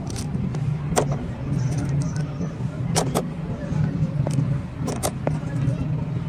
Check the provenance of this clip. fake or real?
real